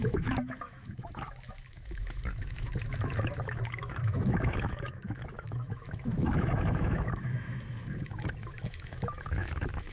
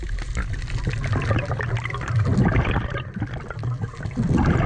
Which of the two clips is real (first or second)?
second